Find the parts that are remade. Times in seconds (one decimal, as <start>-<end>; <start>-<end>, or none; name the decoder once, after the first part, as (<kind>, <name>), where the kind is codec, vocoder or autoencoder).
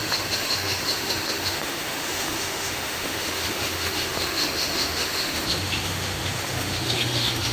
0.0-7.5 (autoencoder, DAC-VAE)